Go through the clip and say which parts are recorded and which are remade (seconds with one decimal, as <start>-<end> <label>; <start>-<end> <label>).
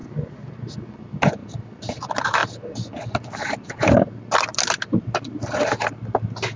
0.0-0.5 remade; 0.5-1.4 recorded; 1.4-2.0 remade; 2.0-6.6 recorded